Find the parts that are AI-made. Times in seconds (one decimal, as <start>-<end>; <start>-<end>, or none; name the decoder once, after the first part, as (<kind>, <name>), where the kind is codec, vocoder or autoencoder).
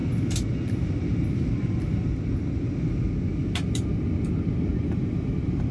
none